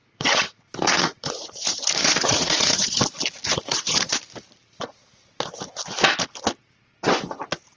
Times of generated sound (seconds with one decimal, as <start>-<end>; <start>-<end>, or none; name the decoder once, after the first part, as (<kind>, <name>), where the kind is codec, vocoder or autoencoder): 0.0-3.0 (vocoder, Vocos); 3.5-4.2